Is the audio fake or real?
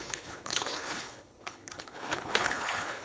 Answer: fake